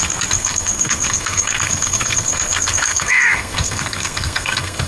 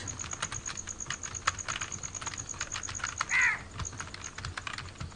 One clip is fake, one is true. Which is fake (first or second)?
first